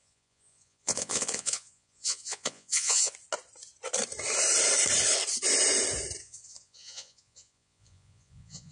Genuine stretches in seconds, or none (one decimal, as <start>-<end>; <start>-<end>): 3.1-6.2